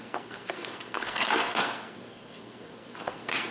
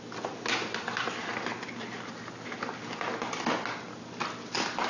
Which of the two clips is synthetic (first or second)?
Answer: first